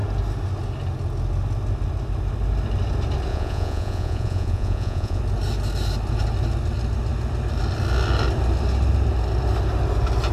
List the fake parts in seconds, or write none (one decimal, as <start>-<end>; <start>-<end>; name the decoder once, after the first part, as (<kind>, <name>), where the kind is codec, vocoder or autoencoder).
3.3-5.2 (vocoder, Vocos)